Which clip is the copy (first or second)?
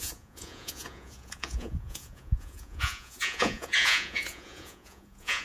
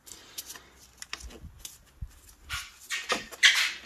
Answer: first